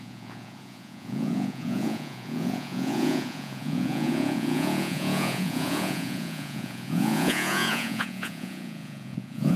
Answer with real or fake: fake